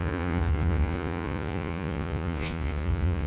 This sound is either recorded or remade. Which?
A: remade